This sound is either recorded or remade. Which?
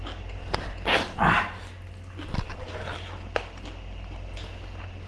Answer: recorded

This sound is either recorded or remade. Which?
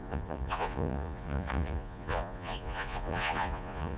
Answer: remade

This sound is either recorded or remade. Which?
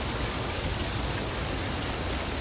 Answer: recorded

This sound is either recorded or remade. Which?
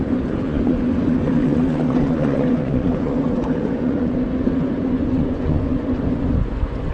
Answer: remade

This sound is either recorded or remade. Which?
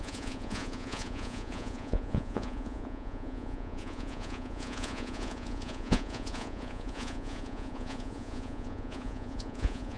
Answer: remade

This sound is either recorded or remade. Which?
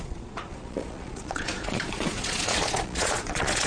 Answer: remade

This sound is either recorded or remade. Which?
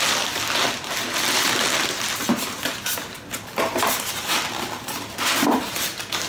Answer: recorded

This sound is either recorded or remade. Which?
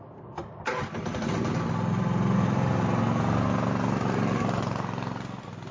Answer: recorded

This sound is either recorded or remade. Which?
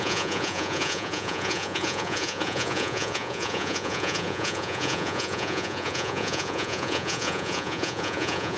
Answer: remade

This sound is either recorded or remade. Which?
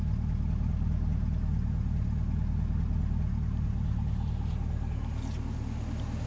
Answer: recorded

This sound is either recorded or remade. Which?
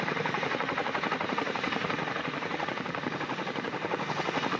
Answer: remade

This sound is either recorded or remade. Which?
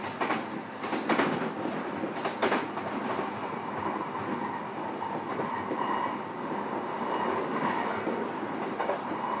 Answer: recorded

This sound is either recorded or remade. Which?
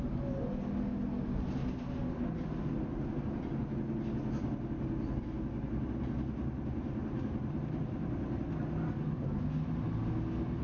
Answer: recorded